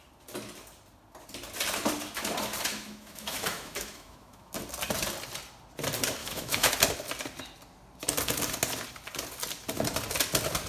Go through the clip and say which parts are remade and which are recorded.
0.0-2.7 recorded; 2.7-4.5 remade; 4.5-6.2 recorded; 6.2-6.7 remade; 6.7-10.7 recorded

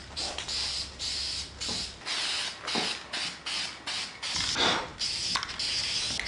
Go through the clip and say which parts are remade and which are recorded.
0.0-6.3 recorded

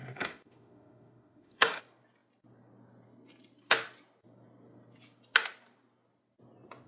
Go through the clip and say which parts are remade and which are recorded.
0.0-1.8 remade; 1.8-6.9 recorded

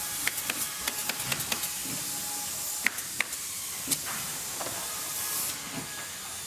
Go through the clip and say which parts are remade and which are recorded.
0.0-6.5 recorded

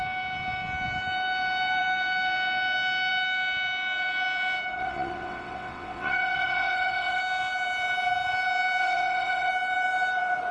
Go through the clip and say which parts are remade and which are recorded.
0.0-4.8 recorded; 4.8-7.2 remade; 7.2-8.8 recorded; 8.8-9.5 remade; 9.5-10.5 recorded

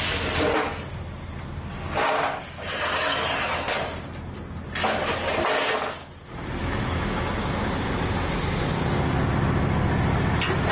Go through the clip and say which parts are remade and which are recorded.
0.0-6.6 recorded; 6.6-7.3 remade; 7.3-10.7 recorded